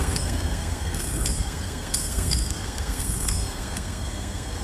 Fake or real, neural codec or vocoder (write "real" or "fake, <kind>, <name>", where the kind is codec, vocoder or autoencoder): fake, codec, SNAC